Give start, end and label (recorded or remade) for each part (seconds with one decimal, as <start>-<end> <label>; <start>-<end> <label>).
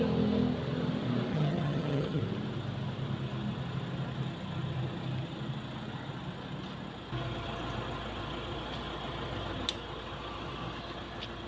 0.0-1.3 recorded; 1.3-2.2 remade; 2.2-11.5 recorded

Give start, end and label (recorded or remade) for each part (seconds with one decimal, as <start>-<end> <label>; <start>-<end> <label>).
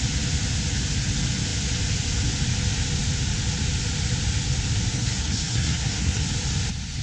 0.0-4.9 recorded; 4.9-6.2 remade; 6.2-7.0 recorded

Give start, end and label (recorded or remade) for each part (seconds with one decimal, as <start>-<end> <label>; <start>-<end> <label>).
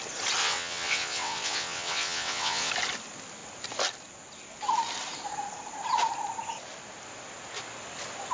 0.0-0.4 recorded; 0.4-2.7 remade; 2.7-8.3 recorded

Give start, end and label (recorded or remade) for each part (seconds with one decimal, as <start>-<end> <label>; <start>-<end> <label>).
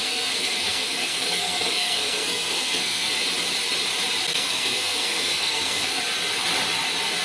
0.0-3.1 remade; 3.1-4.3 recorded; 4.3-6.0 remade; 6.0-7.2 recorded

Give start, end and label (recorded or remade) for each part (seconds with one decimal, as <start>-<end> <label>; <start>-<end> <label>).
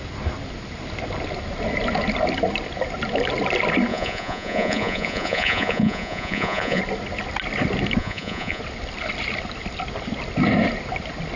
0.0-3.9 recorded; 3.9-6.8 remade; 6.8-8.0 recorded; 8.0-8.6 remade; 8.6-11.4 recorded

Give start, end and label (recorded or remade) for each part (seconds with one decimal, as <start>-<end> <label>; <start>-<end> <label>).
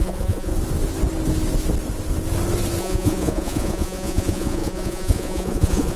0.0-0.5 remade; 0.5-2.8 recorded; 2.8-6.0 remade